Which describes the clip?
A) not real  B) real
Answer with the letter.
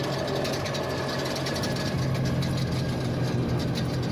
B